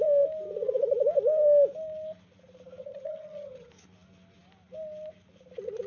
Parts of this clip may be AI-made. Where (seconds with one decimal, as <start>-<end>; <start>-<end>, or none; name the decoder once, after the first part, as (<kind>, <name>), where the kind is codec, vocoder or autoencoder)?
2.8-3.7 (vocoder, HiFi-GAN)